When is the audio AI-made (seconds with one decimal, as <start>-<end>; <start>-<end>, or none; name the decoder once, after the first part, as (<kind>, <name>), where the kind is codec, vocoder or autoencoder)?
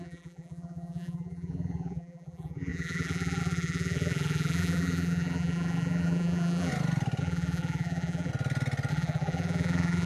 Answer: 0.0-6.7 (vocoder, BigVGAN v2); 7.2-8.3; 8.9-10.1